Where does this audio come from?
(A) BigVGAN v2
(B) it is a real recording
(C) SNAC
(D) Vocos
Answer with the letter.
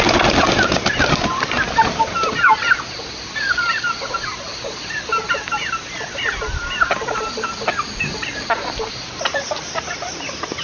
B